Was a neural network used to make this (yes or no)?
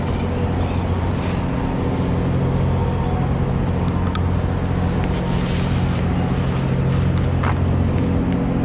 no